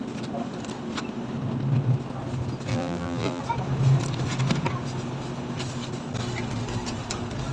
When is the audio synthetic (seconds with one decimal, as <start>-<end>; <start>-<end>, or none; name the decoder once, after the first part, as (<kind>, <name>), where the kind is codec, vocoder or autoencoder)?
2.7-3.4 (vocoder, BigVGAN v2)